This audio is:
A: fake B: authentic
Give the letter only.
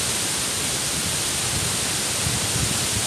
B